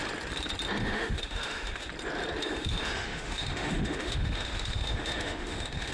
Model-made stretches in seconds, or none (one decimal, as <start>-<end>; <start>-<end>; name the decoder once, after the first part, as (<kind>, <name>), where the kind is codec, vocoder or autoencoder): 0.8-1.9 (autoencoder, DAC-VAE); 2.4-5.9